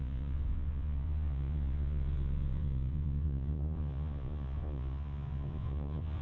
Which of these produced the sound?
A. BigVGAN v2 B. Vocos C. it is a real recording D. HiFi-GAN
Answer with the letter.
B